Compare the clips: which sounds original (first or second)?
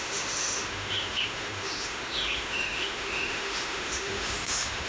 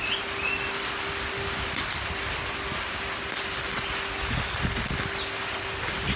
second